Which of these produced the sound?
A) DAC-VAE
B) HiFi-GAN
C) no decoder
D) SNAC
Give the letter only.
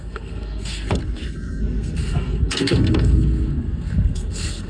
D